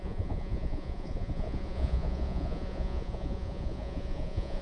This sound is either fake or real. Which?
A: fake